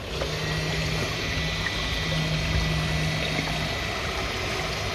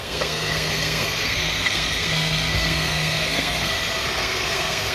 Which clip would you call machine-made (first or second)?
second